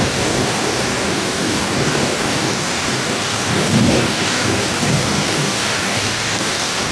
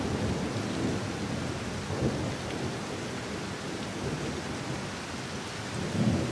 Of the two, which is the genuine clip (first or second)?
second